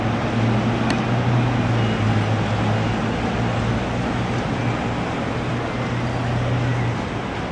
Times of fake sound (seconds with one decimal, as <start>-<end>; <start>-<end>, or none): none